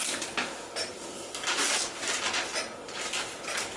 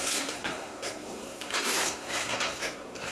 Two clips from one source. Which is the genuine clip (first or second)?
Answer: first